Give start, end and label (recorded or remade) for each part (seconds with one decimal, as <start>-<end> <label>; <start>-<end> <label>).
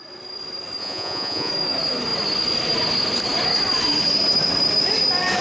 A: 0.0-0.8 recorded; 0.8-1.5 remade; 1.5-5.4 recorded